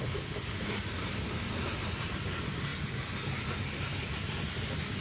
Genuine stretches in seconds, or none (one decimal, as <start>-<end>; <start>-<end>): 0.0-5.0